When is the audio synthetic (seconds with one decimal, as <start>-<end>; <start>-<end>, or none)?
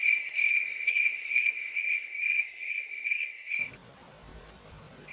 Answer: 0.5-3.3